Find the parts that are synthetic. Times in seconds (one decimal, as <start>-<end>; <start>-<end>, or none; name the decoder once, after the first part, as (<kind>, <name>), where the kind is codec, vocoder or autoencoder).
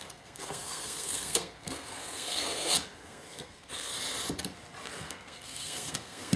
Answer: 0.0-3.9 (codec, SNAC); 5.0-6.4